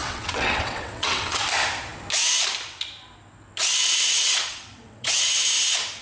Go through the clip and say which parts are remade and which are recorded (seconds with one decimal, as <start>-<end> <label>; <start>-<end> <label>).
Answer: 0.0-1.4 remade; 1.4-3.8 recorded; 3.8-5.3 remade; 5.3-6.0 recorded

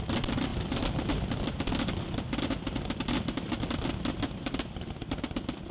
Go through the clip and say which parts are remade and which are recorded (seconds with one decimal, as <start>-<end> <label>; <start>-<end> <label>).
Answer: 0.0-5.7 recorded

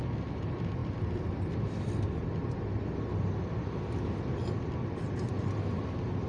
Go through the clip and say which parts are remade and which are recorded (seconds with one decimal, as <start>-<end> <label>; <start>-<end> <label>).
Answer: 0.0-6.3 recorded

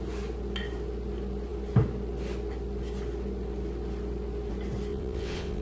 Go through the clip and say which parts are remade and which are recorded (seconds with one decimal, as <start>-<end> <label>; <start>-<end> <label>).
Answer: 0.0-4.9 recorded; 4.9-5.6 remade